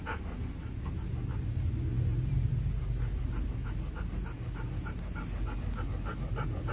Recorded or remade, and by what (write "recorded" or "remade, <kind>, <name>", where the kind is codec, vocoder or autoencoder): recorded